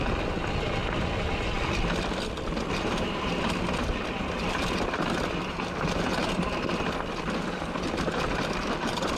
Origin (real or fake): real